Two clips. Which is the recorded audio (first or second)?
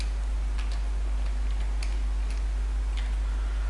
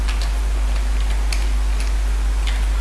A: first